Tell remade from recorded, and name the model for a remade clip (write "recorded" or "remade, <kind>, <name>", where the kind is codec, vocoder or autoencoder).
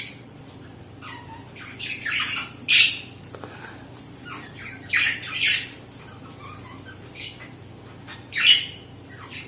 recorded